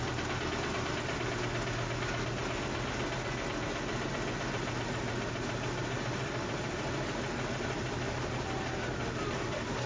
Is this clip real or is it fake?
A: real